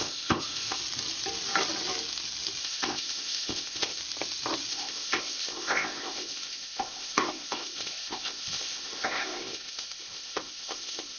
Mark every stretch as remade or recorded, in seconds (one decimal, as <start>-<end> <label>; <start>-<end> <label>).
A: 0.0-0.8 remade; 0.8-2.6 recorded; 2.6-4.0 remade; 4.0-4.7 recorded; 4.7-11.2 remade